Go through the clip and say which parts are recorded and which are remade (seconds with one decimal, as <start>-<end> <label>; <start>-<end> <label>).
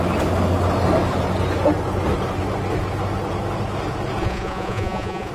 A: 0.0-4.2 recorded; 4.2-5.3 remade